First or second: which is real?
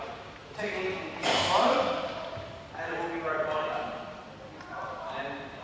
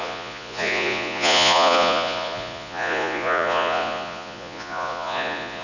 first